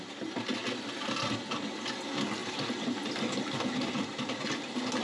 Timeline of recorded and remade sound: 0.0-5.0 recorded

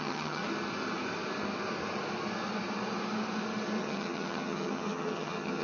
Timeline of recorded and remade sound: 0.0-0.4 remade; 0.4-3.8 recorded; 3.8-5.6 remade

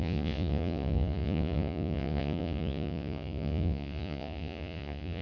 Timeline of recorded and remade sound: 0.0-5.2 remade